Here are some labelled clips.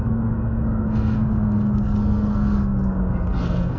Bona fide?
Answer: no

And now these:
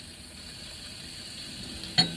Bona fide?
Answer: yes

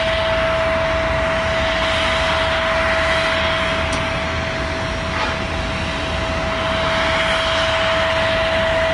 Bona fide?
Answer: yes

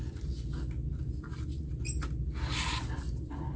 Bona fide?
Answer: yes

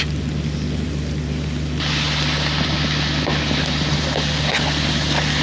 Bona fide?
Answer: yes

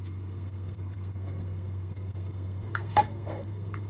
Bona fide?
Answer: no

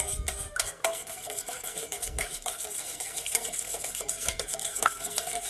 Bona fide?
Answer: no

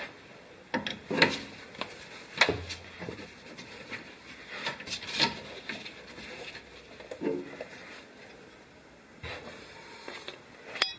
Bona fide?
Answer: yes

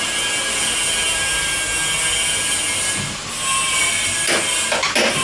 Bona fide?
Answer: yes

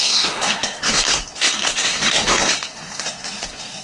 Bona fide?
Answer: no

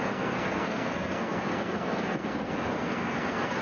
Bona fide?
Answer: no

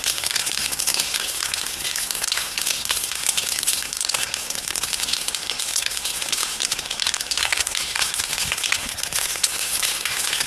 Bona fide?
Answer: no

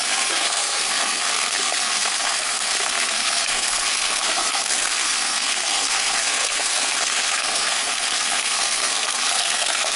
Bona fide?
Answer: no